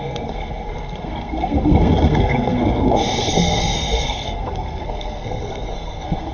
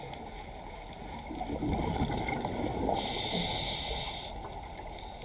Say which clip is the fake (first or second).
first